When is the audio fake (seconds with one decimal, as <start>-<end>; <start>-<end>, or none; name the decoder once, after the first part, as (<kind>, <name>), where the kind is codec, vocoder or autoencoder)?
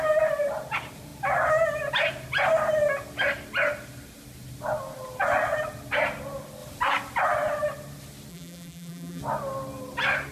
8.3-9.2 (vocoder, BigVGAN v2)